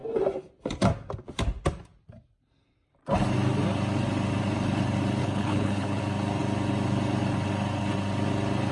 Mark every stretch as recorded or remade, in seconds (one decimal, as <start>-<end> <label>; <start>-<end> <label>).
0.0-5.2 recorded; 5.2-6.0 remade; 6.0-8.7 recorded